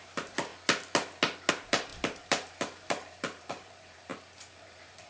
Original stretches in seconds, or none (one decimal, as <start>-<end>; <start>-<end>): 0.5-1.5; 4.1-4.6